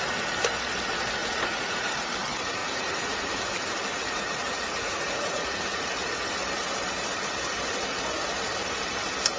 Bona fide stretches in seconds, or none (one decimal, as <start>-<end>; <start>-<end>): 0.0-1.2; 1.9-2.6; 3.3-3.9; 5.9-9.4